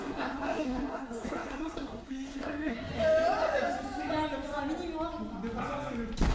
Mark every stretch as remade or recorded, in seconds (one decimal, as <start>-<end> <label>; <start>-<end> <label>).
0.0-2.9 remade; 2.9-6.3 recorded